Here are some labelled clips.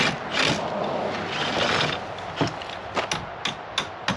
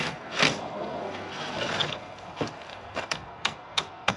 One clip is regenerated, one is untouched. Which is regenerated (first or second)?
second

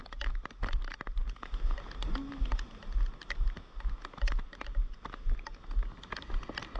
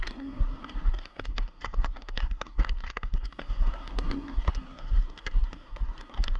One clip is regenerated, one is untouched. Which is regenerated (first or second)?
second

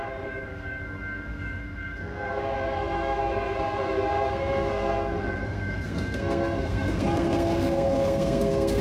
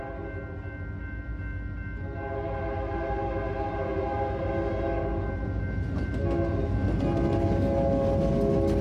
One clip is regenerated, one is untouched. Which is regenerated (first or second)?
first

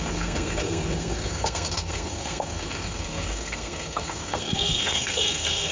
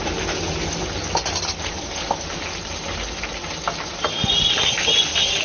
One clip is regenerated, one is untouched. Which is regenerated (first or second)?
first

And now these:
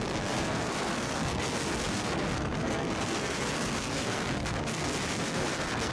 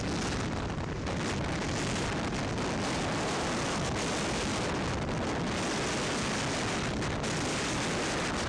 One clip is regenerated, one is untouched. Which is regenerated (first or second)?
first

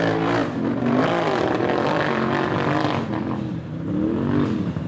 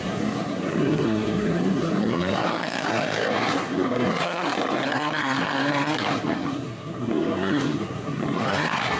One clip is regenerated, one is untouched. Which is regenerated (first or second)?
second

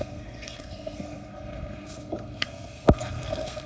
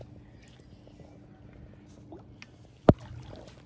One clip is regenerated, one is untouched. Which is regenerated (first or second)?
first